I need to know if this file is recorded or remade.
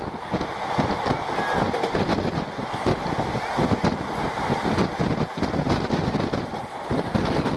recorded